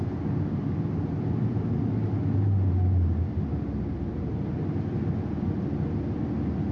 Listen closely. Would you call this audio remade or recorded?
recorded